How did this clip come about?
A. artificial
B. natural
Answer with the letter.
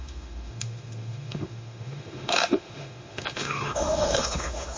A